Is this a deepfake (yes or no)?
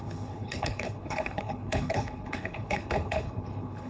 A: yes